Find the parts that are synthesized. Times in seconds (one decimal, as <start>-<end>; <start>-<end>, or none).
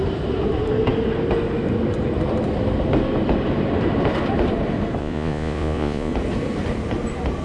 5.0-6.1